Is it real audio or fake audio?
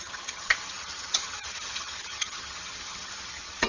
fake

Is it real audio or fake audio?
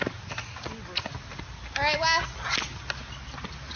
real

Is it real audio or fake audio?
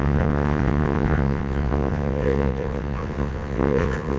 fake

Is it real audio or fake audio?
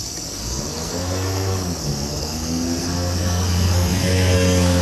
fake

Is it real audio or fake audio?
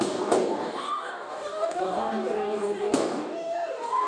fake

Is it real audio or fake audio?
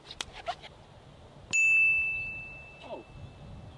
real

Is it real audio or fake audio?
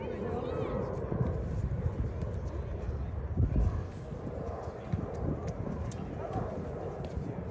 real